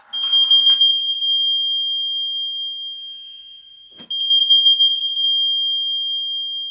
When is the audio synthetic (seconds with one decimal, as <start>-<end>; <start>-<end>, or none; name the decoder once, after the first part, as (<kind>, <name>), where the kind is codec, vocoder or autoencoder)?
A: 0.9-4.0 (autoencoder, DAC-VAE); 4.4-5.0; 5.7-6.2